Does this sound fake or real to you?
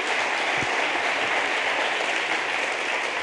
real